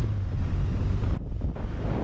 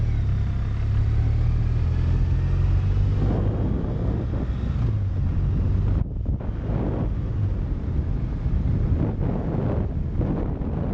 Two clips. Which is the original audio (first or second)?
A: second